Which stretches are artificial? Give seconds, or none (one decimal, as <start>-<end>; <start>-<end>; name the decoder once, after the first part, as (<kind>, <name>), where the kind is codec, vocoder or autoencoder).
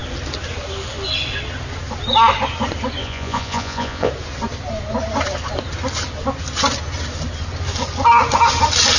3.0-4.1 (vocoder, Vocos)